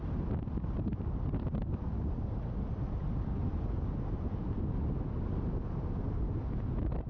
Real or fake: real